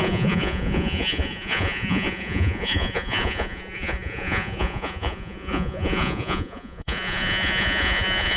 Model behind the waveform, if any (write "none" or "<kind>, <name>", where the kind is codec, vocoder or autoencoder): vocoder, Vocos